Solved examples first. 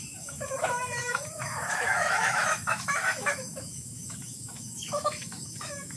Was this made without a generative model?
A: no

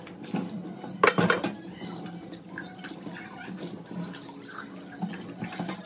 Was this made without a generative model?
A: yes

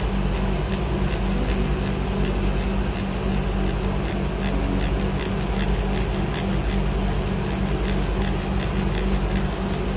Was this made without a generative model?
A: yes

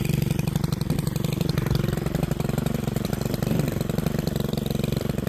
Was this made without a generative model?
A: no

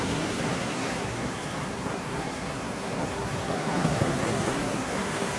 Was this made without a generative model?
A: no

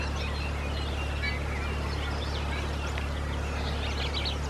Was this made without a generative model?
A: yes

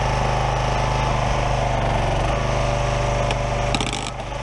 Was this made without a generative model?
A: yes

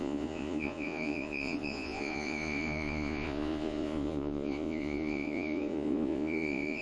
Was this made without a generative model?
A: no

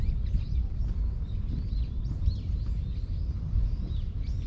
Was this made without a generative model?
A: yes